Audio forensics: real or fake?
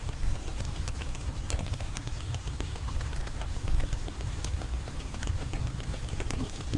fake